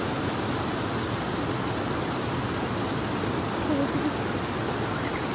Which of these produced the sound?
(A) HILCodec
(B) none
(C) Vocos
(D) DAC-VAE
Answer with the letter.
B